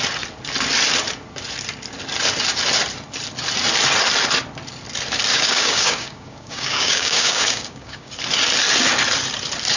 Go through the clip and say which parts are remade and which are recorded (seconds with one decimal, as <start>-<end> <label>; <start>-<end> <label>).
0.0-5.3 recorded; 5.3-8.1 remade; 8.1-9.8 recorded

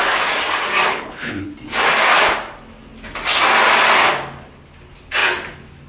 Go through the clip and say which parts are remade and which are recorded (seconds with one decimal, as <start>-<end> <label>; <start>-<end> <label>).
0.0-0.9 recorded; 0.9-1.5 remade; 1.5-5.9 recorded

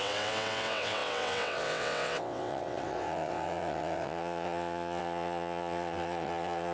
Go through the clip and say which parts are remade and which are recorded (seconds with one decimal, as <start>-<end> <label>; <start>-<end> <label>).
0.0-6.7 remade

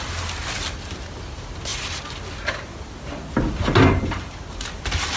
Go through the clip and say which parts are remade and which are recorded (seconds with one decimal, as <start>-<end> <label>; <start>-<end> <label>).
0.0-5.2 recorded

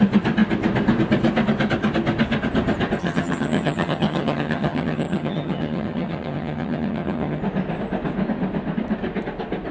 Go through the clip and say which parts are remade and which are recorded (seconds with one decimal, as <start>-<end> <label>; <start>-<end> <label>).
0.0-3.0 recorded; 3.0-7.4 remade; 7.4-9.7 recorded

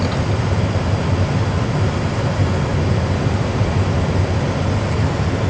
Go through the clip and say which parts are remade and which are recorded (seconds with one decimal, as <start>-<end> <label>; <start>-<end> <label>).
0.0-5.5 recorded

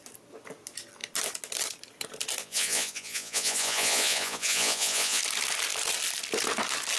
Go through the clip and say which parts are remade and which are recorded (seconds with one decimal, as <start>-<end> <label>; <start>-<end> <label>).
0.0-2.4 recorded; 2.4-5.2 remade; 5.2-7.0 recorded

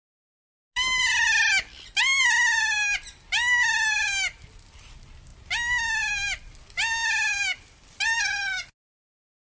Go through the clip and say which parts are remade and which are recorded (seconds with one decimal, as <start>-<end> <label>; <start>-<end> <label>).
0.0-9.4 recorded